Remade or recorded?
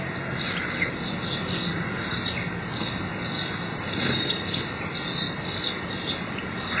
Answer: recorded